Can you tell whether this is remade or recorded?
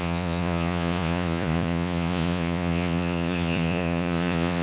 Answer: remade